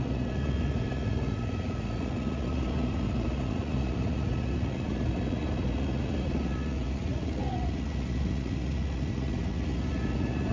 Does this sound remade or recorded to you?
remade